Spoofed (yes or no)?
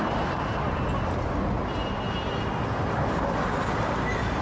no